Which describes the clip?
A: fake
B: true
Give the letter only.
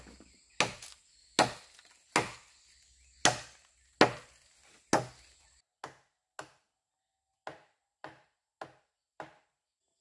B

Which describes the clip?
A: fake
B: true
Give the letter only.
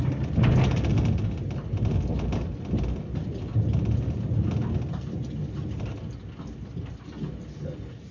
B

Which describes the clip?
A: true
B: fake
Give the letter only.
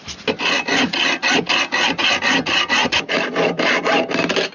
A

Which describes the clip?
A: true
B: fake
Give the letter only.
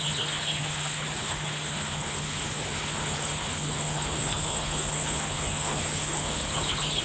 B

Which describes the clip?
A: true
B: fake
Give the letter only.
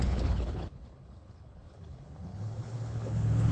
B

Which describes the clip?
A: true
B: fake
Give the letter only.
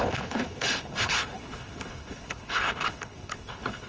B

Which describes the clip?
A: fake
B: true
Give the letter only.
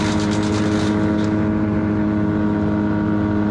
B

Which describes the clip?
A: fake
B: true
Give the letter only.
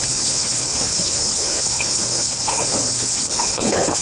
A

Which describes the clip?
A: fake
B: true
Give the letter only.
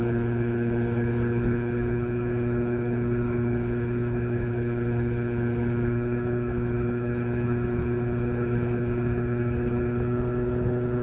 A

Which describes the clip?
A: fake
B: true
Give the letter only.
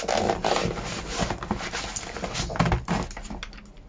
B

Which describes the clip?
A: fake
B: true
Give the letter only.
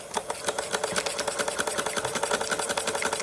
B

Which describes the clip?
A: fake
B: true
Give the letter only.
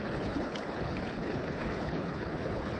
A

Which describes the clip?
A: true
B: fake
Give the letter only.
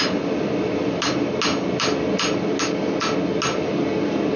A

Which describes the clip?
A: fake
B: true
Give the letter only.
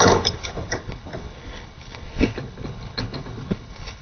A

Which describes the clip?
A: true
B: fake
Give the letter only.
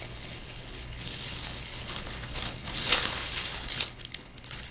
B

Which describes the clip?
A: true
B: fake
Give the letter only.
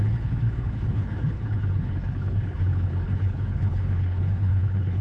B